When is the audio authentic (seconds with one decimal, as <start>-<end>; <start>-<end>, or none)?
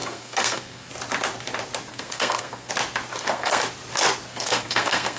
0.9-1.9; 2.7-3.1; 3.6-4.3